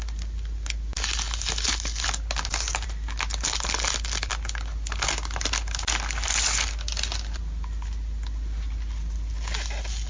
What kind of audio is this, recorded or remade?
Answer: recorded